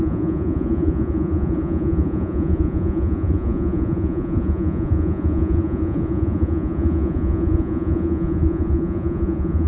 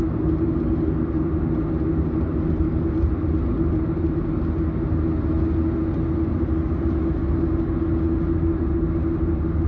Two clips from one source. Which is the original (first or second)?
second